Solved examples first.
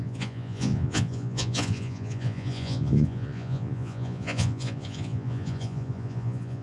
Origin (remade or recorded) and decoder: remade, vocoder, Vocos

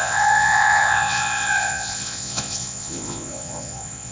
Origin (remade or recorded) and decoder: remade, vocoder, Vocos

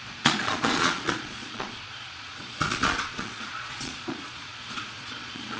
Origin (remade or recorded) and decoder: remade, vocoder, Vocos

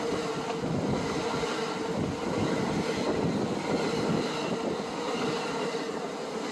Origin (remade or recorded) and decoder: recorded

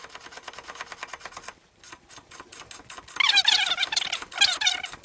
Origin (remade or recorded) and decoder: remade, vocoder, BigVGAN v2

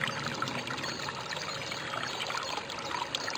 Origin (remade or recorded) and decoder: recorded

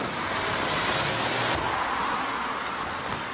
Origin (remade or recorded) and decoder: recorded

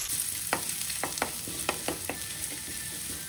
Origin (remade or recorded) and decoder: recorded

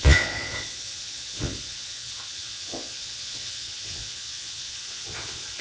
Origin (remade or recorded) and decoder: remade, vocoder, Vocos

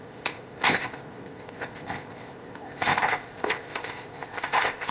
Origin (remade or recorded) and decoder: remade, codec, ZipCodec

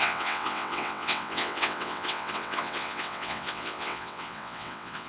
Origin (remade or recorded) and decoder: remade, vocoder, WaveNeXt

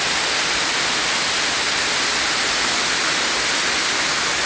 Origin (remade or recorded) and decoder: recorded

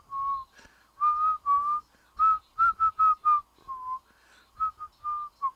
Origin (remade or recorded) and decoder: recorded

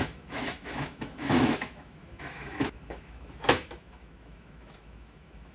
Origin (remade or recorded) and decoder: remade, autoencoder, DAC-VAE